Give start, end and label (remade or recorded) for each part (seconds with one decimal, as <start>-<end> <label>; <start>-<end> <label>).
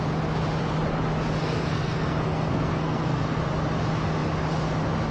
0.0-1.4 recorded; 1.4-3.4 remade; 3.4-5.1 recorded